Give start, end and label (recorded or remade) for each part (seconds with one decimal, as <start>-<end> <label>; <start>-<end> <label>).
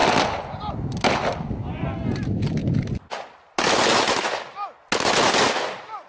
0.0-6.1 recorded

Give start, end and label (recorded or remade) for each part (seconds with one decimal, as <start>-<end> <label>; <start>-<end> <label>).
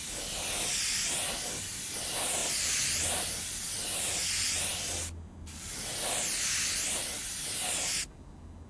0.0-2.4 recorded; 2.4-3.4 remade; 3.4-8.7 recorded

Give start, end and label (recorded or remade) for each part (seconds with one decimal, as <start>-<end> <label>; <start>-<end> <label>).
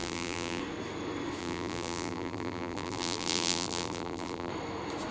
0.0-0.6 remade; 0.6-1.4 recorded; 1.4-4.5 remade; 4.5-5.1 recorded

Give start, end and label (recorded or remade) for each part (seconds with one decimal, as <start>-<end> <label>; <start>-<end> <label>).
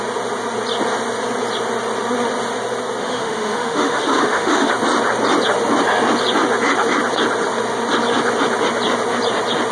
0.0-3.0 recorded; 3.0-4.7 remade; 4.7-9.7 recorded